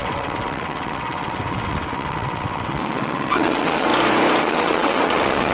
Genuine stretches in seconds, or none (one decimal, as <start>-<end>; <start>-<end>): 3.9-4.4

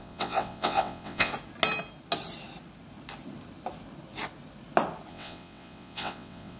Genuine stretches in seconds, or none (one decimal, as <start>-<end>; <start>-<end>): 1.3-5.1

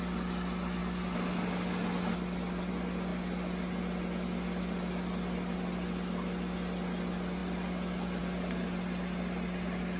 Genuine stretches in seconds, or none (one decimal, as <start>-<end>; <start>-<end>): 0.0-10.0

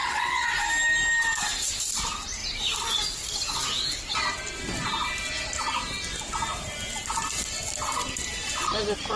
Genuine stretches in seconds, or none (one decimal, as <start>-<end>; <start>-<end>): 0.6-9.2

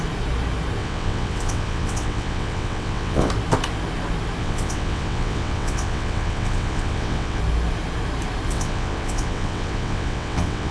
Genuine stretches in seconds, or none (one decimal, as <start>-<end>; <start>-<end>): 0.0-0.8; 3.3-4.4; 7.4-8.5

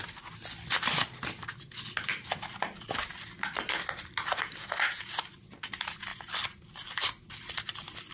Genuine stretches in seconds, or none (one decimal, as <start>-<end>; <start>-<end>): 0.0-8.1